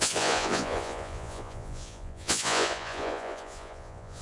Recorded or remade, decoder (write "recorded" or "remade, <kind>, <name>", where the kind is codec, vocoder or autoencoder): remade, vocoder, Vocos